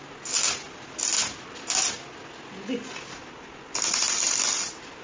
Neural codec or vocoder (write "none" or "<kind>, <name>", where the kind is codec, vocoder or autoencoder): none